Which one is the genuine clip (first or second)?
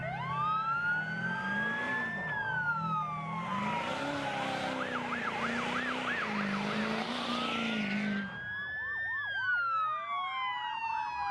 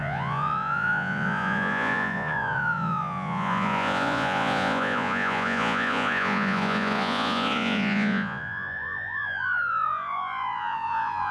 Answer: first